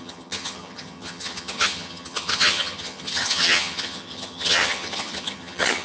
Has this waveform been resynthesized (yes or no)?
yes